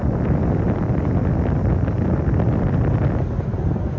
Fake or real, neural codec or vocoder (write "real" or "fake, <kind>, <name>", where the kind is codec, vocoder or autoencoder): real